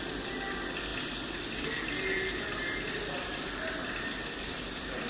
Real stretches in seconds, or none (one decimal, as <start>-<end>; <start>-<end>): 0.0-5.1